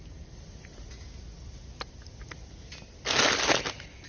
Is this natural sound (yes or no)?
yes